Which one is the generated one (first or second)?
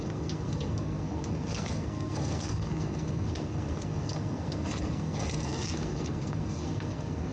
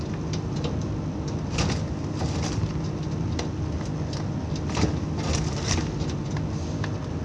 first